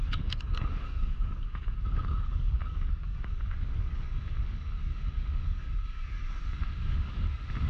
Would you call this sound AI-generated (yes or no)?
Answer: yes